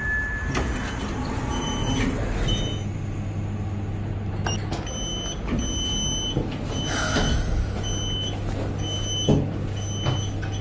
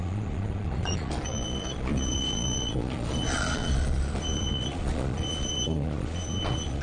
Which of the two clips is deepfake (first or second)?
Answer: second